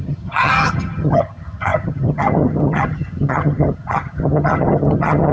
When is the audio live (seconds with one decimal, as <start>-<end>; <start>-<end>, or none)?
none